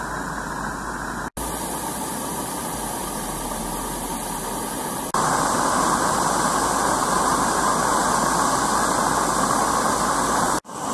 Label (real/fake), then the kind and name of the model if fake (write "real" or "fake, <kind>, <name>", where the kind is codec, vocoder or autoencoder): real